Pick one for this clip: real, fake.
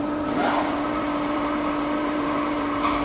fake